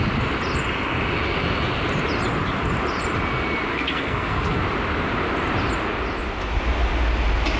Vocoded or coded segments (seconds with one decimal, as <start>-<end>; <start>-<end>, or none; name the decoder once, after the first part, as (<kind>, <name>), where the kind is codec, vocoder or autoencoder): 3.7-4.6 (codec, SNAC)